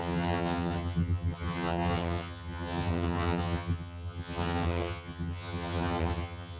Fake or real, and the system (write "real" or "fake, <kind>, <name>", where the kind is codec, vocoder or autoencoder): fake, vocoder, HiFi-GAN